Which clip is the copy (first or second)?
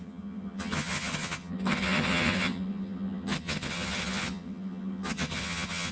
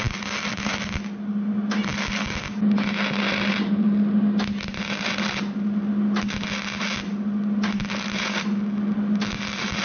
first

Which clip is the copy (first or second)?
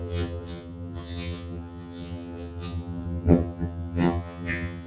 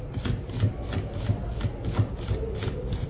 first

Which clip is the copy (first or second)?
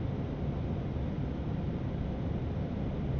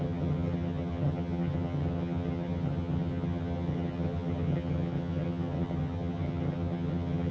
second